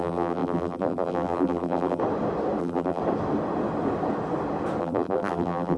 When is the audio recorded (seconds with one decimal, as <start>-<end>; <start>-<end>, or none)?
2.0-2.6; 3.0-4.8